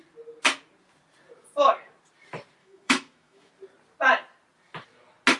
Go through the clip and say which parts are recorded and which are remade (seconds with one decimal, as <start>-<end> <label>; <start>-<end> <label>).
0.0-2.6 recorded; 2.6-3.5 remade; 3.5-5.4 recorded